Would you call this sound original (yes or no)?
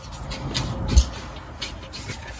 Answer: yes